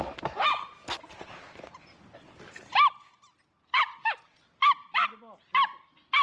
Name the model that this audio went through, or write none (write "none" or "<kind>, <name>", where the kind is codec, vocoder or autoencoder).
none